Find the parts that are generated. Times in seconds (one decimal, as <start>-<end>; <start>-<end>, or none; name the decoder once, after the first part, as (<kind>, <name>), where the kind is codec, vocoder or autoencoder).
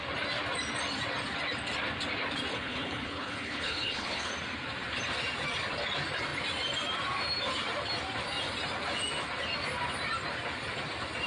2.5-4.3 (codec, HILCodec)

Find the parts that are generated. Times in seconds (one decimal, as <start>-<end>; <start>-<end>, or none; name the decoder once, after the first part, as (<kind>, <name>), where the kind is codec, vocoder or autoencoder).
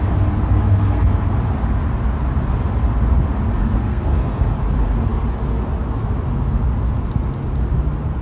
0.6-1.3 (codec, SNAC); 3.6-4.4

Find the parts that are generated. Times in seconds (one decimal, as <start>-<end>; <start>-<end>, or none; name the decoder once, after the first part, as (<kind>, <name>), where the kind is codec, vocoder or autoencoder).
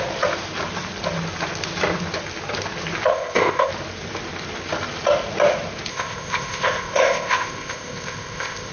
3.1-3.7 (codec, ZipCodec); 5.9-8.7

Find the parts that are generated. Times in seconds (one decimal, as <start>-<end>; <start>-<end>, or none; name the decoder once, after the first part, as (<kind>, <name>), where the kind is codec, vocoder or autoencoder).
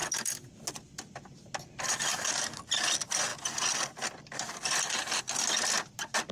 2.1-2.6 (codec, DAC)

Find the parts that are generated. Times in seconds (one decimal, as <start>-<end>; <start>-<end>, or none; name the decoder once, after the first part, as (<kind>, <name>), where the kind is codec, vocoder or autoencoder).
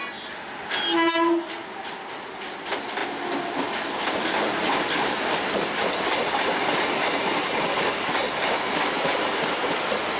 none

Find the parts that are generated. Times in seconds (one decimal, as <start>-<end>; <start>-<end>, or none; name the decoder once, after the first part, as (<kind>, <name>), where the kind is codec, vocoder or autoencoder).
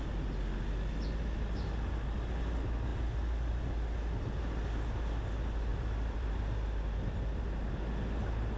5.7-6.4 (vocoder, BigVGAN v2)